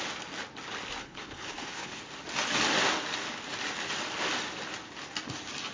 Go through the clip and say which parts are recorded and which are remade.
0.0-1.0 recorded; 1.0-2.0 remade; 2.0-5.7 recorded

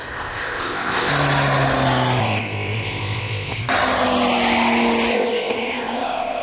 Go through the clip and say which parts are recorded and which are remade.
0.0-1.1 remade; 1.1-2.2 recorded; 2.2-3.6 remade; 3.6-5.1 recorded; 5.1-6.4 remade

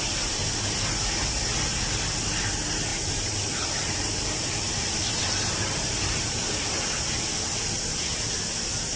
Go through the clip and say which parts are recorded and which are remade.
0.0-2.9 recorded; 2.9-7.0 remade; 7.0-9.0 recorded

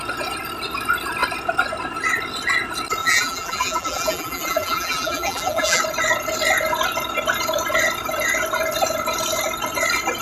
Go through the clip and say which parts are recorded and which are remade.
0.0-3.0 recorded; 3.0-5.8 remade; 5.8-10.2 recorded